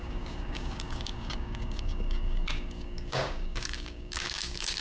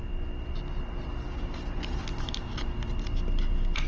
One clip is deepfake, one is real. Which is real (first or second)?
second